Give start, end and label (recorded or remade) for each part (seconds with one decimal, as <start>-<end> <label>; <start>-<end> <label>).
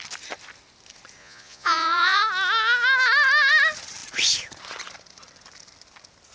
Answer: 0.0-1.2 recorded; 1.2-2.2 remade; 2.2-6.3 recorded